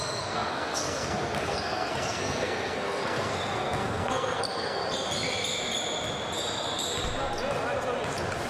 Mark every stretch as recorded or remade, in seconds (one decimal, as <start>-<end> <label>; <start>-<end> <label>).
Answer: 0.0-4.8 remade; 4.8-8.5 recorded